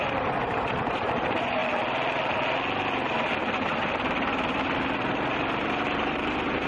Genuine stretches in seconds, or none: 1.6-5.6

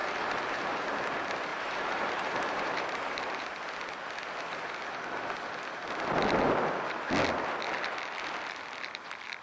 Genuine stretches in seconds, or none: 0.9-1.5; 3.5-9.4

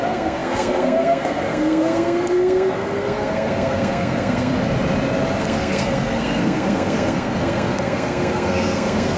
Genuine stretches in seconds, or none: 4.5-5.4

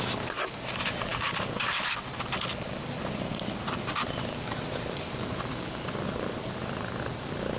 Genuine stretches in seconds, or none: 0.0-1.1; 5.5-7.6